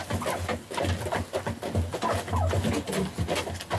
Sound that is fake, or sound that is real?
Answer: real